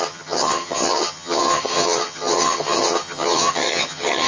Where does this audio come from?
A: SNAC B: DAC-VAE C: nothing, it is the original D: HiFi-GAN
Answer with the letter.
D